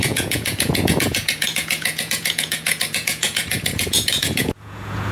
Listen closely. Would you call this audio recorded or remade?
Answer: remade